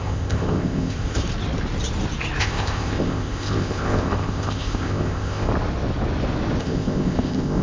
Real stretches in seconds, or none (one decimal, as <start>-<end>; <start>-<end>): 1.2-2.4; 5.5-6.6